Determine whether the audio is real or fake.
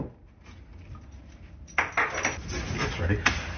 real